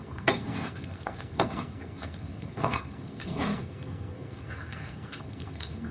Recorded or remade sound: remade